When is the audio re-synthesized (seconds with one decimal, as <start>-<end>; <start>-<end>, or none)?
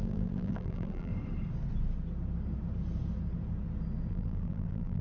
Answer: 0.0-1.1; 4.1-5.0